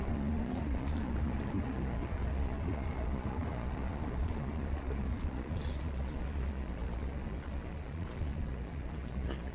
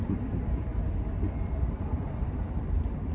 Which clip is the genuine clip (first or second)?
second